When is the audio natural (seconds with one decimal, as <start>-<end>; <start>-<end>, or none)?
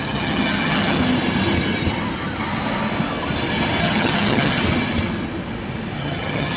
1.0-3.8; 4.6-6.0